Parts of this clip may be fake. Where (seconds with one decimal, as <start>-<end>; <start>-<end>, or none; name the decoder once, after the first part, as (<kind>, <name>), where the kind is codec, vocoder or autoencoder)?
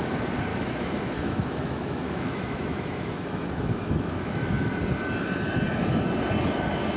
0.5-4.7 (autoencoder, DAC-VAE)